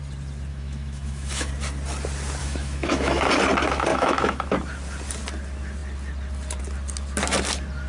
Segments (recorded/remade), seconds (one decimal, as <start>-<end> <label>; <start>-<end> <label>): 0.0-0.5 recorded; 0.5-1.5 remade; 1.5-2.4 recorded; 2.4-3.3 remade; 3.3-3.9 recorded; 3.9-4.5 remade; 4.5-7.9 recorded